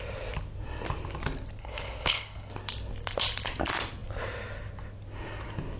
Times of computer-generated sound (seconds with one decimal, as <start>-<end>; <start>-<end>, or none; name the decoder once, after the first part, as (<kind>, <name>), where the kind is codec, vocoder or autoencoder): 1.6-2.5 (codec, HILCodec)

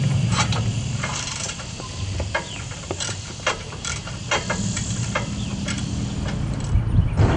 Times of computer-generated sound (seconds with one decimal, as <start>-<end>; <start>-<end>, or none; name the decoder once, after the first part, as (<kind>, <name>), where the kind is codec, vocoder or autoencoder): 0.0-5.5 (vocoder, BigVGAN v2); 7.0-7.4

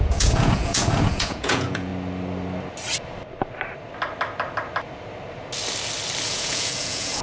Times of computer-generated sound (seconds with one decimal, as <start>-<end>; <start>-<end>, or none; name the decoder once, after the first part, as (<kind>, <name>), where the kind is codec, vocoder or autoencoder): 0.0-1.9 (vocoder, Vocos); 6.2-7.2

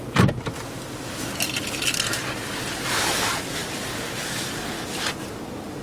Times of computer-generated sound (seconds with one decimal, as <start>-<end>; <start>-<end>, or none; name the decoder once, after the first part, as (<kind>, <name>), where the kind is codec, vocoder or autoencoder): none

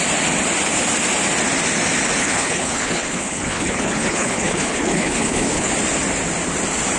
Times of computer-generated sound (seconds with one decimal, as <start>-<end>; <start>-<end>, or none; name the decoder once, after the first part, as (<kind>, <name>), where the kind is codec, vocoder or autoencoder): 2.2-5.7 (codec, HILCodec)

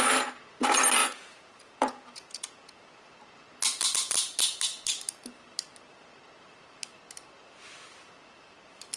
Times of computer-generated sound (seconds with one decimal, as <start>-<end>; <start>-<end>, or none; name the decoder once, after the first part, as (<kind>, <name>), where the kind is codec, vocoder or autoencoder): 1.0-2.8 (vocoder, Vocos)

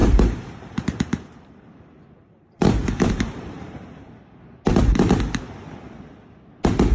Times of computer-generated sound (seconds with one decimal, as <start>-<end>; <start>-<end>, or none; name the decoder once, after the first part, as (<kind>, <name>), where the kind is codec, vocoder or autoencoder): 0.0-4.1 (vocoder, BigVGAN v2)